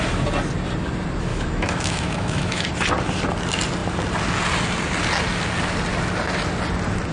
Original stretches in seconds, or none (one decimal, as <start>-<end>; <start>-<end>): 0.0-1.3; 2.7-7.1